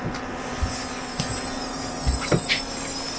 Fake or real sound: real